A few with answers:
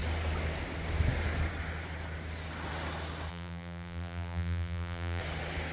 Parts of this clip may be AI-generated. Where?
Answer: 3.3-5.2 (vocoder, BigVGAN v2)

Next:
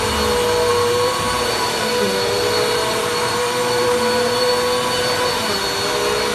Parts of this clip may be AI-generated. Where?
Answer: 0.7-4.5 (vocoder, BigVGAN v2)

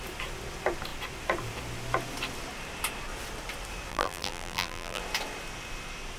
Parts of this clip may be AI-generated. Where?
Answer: 3.9-5.0 (vocoder, BigVGAN v2)

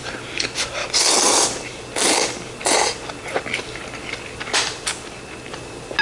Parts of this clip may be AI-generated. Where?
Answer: none

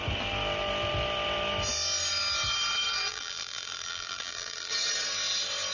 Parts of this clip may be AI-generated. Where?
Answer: 3.1-4.7 (vocoder, BigVGAN v2)